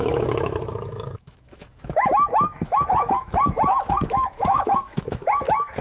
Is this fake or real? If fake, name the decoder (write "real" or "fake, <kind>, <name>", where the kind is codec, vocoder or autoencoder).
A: fake, autoencoder, DAC-VAE